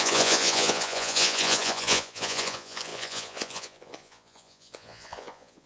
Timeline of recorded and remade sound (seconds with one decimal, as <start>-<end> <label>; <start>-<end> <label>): 0.0-5.7 remade